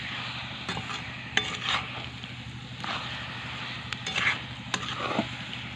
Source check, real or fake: real